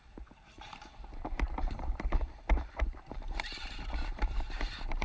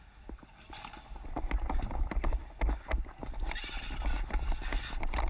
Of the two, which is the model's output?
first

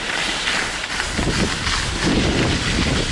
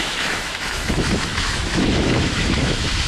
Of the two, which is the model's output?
second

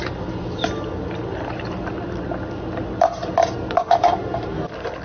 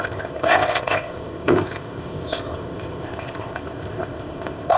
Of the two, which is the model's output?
second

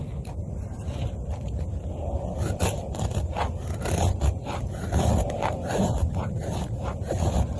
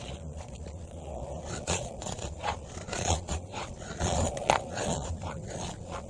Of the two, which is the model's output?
second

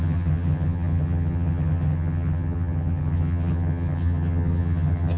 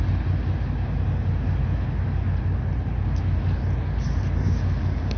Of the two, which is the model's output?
first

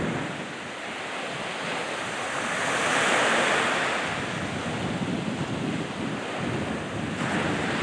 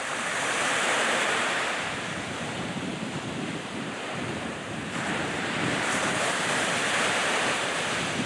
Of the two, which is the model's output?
second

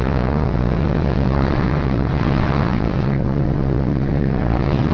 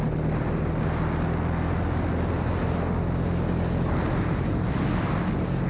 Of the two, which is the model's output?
first